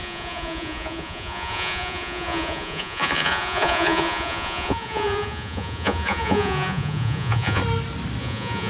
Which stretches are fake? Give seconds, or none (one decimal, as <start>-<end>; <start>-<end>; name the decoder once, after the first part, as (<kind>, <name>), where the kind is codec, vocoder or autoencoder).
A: 0.0-7.6 (vocoder, Vocos); 8.2-8.7